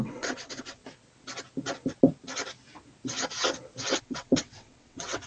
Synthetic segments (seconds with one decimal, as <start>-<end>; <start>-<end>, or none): 0.0-0.8; 4.0-5.3